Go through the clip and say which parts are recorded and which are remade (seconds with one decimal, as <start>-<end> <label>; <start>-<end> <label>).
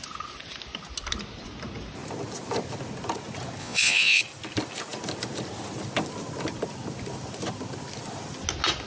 0.0-3.6 recorded; 3.6-4.2 remade; 4.2-8.9 recorded